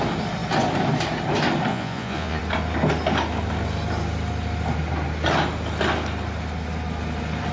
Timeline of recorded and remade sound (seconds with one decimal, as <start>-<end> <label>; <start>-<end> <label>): 0.0-1.7 recorded; 1.7-2.4 remade; 2.4-7.5 recorded